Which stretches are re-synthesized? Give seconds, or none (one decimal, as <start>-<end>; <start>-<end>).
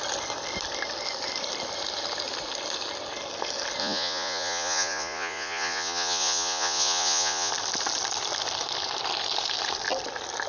3.8-7.5